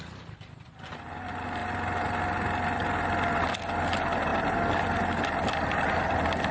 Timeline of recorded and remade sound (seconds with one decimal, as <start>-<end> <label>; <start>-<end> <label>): 0.0-6.5 recorded